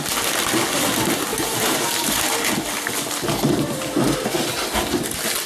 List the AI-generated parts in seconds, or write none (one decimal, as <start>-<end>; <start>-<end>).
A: 1.3-2.2